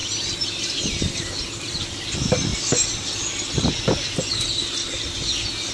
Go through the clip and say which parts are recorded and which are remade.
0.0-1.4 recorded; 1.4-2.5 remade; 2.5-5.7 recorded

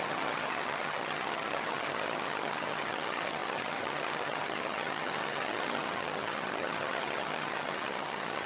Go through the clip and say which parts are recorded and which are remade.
0.0-8.5 remade

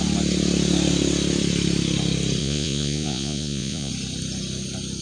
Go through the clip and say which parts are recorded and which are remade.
0.0-2.4 recorded; 2.4-3.9 remade; 3.9-5.0 recorded